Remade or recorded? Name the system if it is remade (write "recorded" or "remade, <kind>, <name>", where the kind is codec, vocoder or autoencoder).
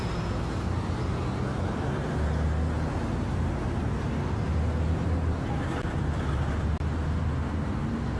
recorded